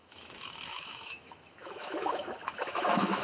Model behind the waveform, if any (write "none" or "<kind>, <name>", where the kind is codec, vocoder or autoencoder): autoencoder, DAC-VAE